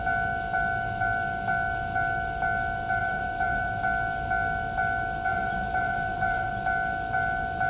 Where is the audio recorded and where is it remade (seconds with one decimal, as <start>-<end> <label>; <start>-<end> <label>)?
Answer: 0.0-3.0 recorded; 3.0-3.8 remade; 3.8-5.3 recorded; 5.3-6.5 remade; 6.5-7.7 recorded